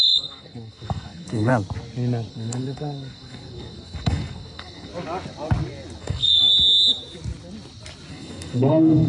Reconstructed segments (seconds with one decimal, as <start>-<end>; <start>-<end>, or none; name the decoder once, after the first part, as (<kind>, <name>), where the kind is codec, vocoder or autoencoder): 0.0-1.5 (codec, SNAC); 2.3-4.9; 6.0-6.5; 8.1-9.1

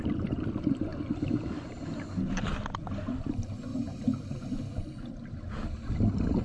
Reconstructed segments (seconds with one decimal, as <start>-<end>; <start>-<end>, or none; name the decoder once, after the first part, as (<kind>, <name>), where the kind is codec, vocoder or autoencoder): 3.7-4.6 (vocoder, BigVGAN v2)

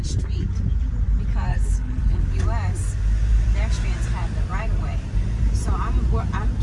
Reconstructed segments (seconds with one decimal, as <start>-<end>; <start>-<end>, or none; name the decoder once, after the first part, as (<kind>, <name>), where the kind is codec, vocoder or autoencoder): 1.5-2.2 (codec, HILCodec)

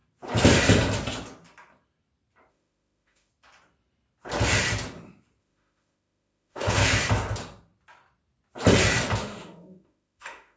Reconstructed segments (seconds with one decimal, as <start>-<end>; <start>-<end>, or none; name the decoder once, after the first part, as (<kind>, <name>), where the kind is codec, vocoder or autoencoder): 2.5-3.3 (autoencoder, DAC-VAE); 5.4-6.8; 9.2-10.6

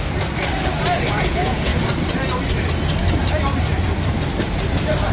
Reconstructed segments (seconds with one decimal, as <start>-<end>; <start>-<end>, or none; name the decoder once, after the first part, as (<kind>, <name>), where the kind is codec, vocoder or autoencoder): 1.1-1.7 (vocoder, Vocos)

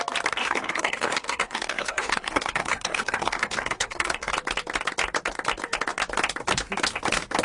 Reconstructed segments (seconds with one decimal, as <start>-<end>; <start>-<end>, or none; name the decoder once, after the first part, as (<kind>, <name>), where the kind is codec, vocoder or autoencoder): 0.4-4.3 (codec, SNAC)